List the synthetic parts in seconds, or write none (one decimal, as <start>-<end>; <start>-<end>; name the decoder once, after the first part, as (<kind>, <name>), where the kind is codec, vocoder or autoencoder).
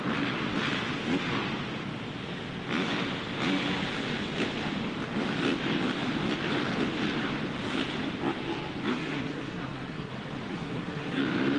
8.9-10.1 (codec, SNAC); 10.5-11.2